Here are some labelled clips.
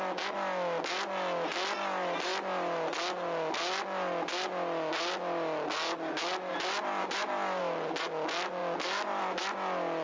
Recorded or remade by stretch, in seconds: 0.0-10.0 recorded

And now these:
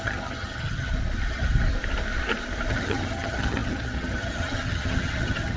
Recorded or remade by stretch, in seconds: 0.0-0.9 remade; 0.9-2.7 recorded; 2.7-5.6 remade

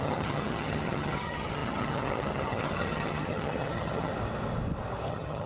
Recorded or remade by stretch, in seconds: 0.0-4.1 remade; 4.1-5.1 recorded; 5.1-5.5 remade

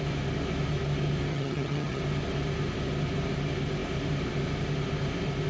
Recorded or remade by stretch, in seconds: 0.0-1.3 recorded; 1.3-2.0 remade; 2.0-5.5 recorded

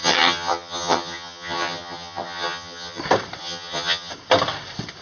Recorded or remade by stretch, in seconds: 0.0-3.0 remade; 3.0-3.4 recorded; 3.4-4.1 remade; 4.1-5.0 recorded

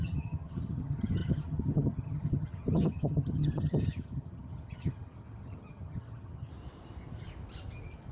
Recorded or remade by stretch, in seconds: 0.0-6.5 remade; 6.5-8.1 recorded

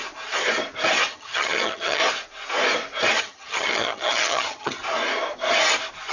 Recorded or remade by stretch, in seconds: 0.0-1.1 recorded; 1.1-2.0 remade; 2.0-3.2 recorded; 3.2-4.8 remade; 4.8-6.1 recorded

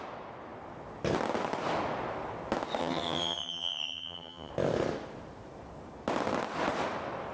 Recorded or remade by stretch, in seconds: 0.0-2.8 recorded; 2.8-4.5 remade; 4.5-7.3 recorded